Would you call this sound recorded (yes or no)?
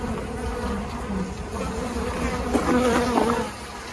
yes